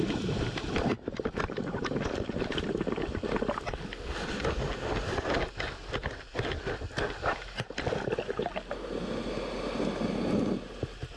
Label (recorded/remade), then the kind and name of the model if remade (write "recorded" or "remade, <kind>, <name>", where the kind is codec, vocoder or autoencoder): recorded